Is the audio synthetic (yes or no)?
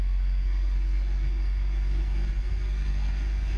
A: yes